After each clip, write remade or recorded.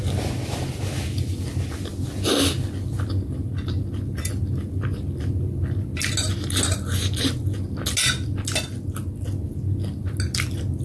recorded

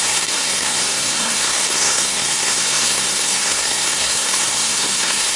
remade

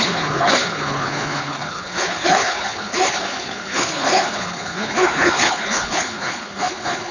remade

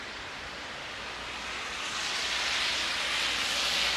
recorded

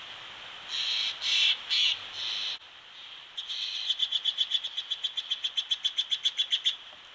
recorded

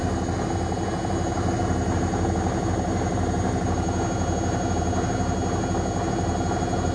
recorded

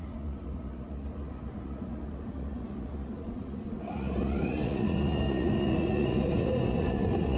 remade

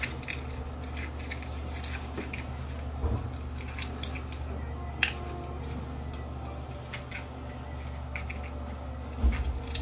recorded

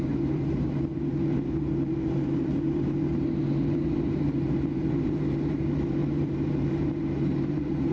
remade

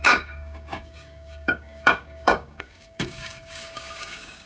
remade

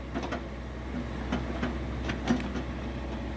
recorded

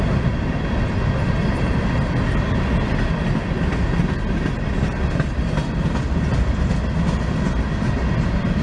recorded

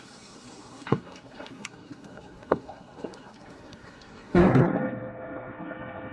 remade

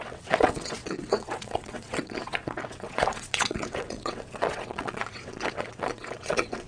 remade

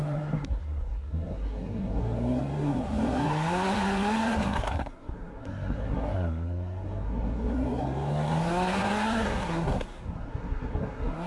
remade